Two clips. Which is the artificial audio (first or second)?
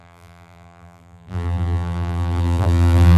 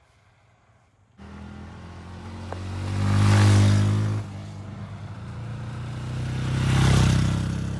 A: first